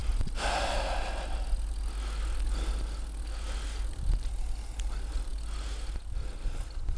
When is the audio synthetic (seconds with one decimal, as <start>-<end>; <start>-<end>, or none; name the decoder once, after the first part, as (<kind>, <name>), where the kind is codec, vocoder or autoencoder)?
none